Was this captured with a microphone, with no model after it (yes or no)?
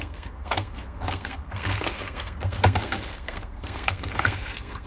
no